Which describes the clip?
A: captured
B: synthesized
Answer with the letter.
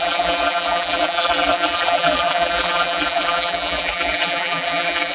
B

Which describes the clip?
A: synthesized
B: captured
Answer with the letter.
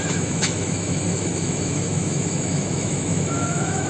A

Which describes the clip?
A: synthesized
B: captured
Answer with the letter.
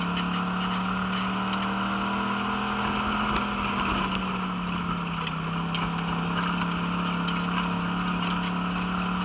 B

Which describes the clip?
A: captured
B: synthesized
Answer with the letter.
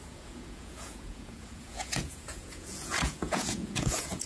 B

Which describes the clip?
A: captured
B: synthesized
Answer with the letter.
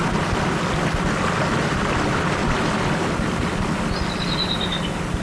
A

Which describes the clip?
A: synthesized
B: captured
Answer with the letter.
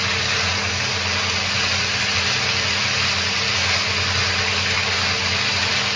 B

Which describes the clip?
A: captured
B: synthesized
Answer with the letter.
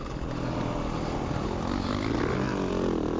A